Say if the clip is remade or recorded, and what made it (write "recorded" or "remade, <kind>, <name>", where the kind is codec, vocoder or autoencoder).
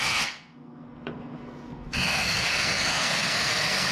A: remade, codec, SNAC